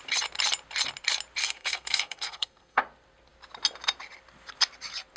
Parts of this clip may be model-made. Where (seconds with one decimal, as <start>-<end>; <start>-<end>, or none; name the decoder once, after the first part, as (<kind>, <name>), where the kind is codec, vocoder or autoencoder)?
1.4-2.8 (codec, SNAC)